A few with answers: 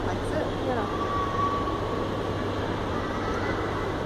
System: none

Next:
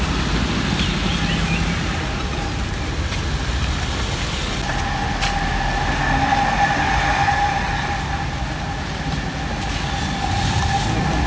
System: none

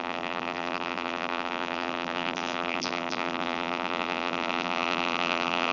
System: vocoder, BigVGAN v2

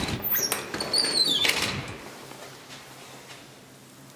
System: none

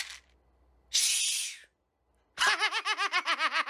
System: none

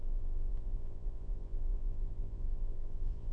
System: vocoder, Vocos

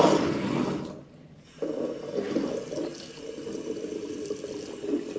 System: none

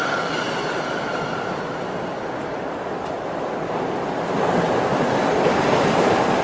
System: none